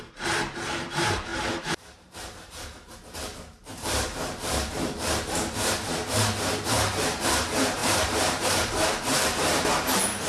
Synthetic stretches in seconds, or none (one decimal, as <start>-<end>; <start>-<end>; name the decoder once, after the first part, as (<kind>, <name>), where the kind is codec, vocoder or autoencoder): 0.0-10.3 (vocoder, BigVGAN v2)